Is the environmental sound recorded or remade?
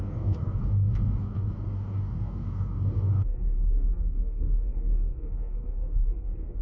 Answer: remade